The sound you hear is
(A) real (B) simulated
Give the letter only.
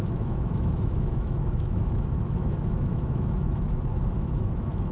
B